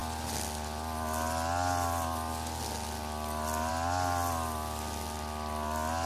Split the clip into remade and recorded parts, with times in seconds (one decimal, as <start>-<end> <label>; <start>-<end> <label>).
0.0-6.1 recorded